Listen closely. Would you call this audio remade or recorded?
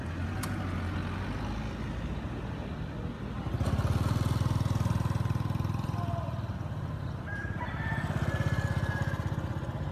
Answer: recorded